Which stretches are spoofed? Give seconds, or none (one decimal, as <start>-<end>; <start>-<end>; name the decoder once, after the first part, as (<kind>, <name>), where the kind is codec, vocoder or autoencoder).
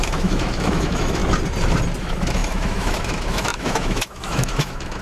0.0-1.2 (autoencoder, DAC-VAE); 2.0-5.0